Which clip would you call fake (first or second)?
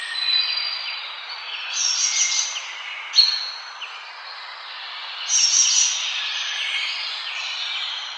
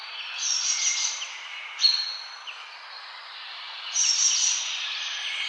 second